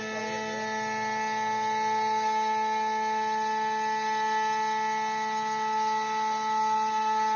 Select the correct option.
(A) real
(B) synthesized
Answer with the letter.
A